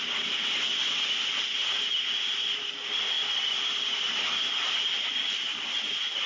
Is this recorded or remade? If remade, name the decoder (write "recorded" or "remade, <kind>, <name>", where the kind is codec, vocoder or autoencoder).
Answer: remade, vocoder, BigVGAN v2